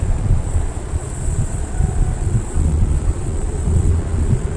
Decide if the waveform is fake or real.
fake